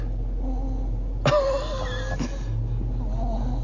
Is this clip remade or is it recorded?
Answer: recorded